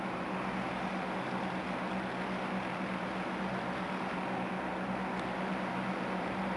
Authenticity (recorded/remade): recorded